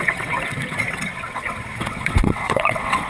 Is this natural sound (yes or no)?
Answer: no